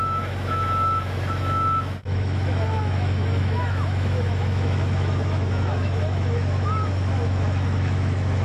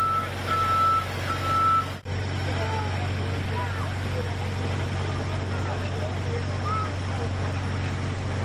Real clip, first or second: second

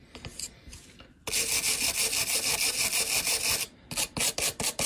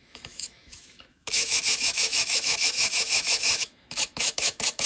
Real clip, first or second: first